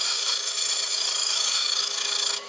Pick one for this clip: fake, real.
fake